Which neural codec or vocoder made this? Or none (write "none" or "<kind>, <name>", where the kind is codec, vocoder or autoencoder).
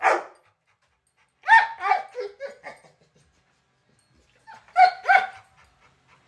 none